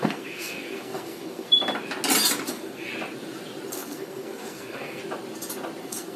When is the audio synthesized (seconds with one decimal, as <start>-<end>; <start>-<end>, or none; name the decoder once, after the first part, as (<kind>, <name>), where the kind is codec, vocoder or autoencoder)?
0.0-1.5 (codec, SNAC); 2.5-2.9; 3.7-5.0; 5.8-6.2